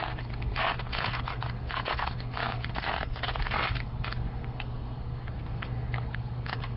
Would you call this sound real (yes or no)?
no